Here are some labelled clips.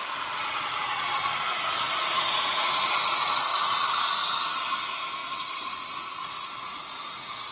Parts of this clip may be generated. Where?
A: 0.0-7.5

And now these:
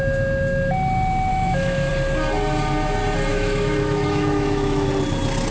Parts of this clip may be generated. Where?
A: 1.3-1.9; 3.3-4.9

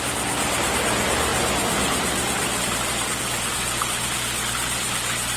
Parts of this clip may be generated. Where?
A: none